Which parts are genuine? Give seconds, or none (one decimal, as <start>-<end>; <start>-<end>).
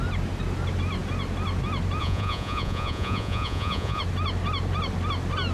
0.0-2.0; 4.0-5.5